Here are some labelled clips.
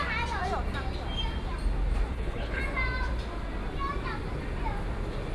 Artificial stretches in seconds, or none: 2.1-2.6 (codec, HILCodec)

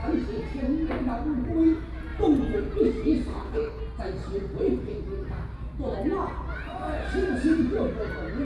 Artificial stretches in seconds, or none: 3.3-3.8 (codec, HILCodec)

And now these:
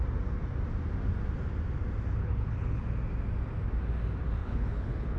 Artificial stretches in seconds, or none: 2.2-2.8 (codec, HILCodec); 4.4-5.2